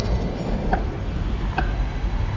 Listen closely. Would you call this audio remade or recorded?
recorded